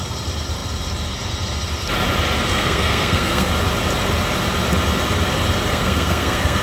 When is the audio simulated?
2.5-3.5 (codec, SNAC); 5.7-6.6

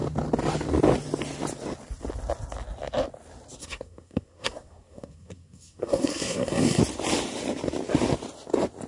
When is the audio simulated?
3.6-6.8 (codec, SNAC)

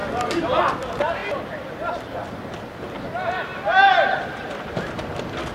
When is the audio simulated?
0.0-0.6 (vocoder, BigVGAN v2); 1.2-2.2

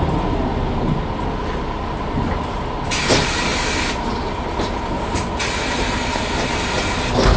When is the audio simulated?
none

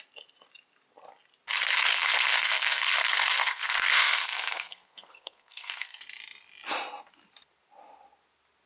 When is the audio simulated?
1.9-6.0 (codec, SNAC)

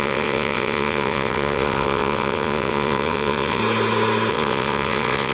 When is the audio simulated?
0.0-3.6 (vocoder, WaveNeXt); 4.3-5.3

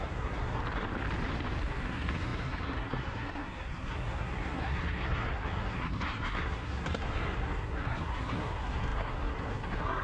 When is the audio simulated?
0.0-0.6 (codec, SNAC); 1.6-10.0

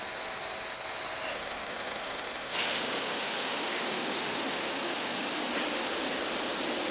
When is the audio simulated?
1.3-5.4 (autoencoder, DAC-VAE)